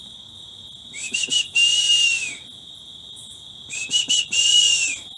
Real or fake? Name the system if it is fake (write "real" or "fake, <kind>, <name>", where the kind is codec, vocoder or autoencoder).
real